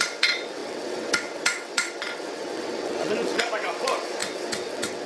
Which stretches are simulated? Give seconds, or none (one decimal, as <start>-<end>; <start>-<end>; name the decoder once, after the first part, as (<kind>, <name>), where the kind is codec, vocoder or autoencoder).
0.0-5.1 (vocoder, WaveNeXt)